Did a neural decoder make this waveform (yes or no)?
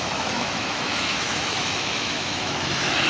yes